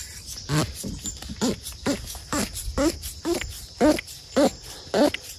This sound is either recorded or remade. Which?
recorded